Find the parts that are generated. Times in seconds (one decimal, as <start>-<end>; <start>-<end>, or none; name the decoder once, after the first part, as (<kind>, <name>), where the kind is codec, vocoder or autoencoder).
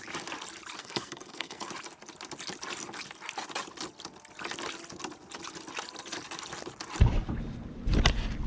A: 0.8-1.7 (codec, SNAC)